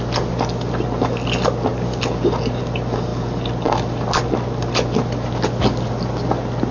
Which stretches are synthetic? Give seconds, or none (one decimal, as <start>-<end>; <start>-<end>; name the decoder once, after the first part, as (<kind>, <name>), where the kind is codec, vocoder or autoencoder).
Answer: none